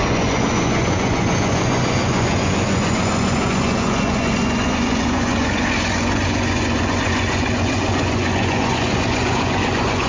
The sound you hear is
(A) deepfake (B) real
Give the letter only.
A